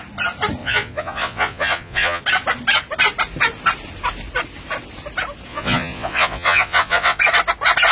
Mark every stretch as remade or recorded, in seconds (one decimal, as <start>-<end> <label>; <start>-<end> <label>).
0.0-0.6 recorded; 0.6-2.2 remade; 2.2-5.5 recorded; 5.5-7.2 remade; 7.2-7.9 recorded